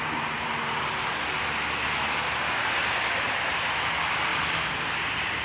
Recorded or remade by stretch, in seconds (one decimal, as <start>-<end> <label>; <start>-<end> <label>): 0.0-5.4 recorded